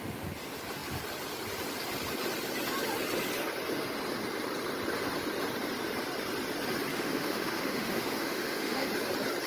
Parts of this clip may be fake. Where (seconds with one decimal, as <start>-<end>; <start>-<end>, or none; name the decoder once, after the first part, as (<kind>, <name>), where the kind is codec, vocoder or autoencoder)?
6.9-8.9 (autoencoder, DAC-VAE)